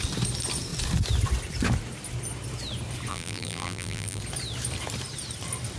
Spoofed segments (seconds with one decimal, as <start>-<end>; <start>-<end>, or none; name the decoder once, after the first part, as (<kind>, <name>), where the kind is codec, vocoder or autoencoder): 3.1-4.2 (vocoder, BigVGAN v2)